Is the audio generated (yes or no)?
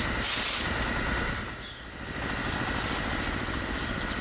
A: no